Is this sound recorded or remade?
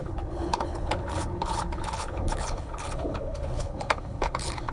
remade